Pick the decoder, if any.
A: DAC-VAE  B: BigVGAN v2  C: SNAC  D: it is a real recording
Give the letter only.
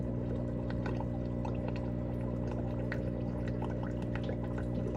D